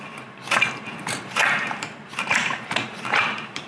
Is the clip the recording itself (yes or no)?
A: no